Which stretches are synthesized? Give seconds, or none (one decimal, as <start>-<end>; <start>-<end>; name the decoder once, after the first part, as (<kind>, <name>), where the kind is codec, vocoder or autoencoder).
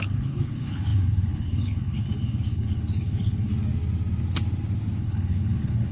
0.0-3.5 (codec, HILCodec); 5.0-5.9